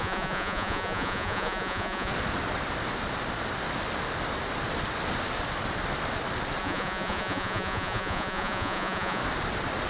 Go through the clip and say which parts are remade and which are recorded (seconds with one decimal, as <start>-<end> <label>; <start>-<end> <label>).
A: 0.0-2.1 remade; 2.1-6.6 recorded; 6.6-9.2 remade; 9.2-9.9 recorded